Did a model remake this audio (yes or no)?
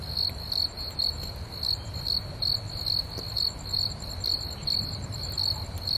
no